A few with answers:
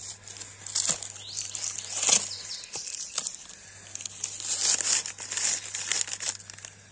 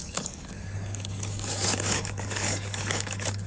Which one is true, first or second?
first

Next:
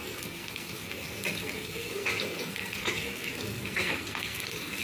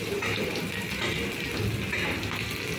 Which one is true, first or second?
second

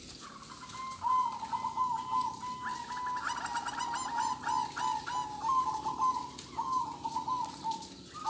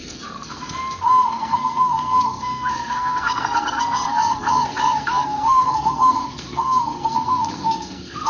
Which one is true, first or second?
first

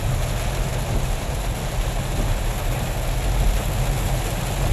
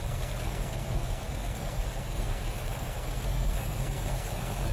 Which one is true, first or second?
first